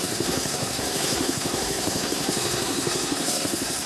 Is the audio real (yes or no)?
no